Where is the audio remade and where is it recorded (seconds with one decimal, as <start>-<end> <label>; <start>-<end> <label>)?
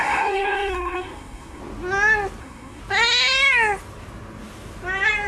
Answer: 0.0-1.6 remade; 1.6-2.4 recorded; 2.4-2.8 remade; 2.8-5.3 recorded